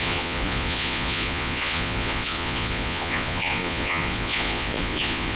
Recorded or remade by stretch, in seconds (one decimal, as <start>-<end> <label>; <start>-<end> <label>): 0.0-5.4 remade